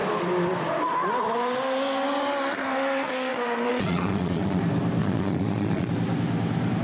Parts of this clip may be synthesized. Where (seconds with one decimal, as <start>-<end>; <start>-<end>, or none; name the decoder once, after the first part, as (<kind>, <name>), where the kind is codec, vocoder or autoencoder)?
3.7-4.6 (vocoder, Vocos); 5.0-5.9